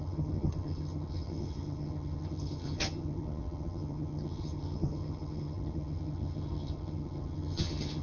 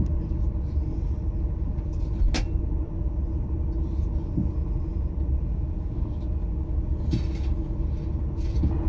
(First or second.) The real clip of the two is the second